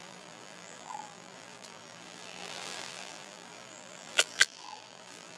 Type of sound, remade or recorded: remade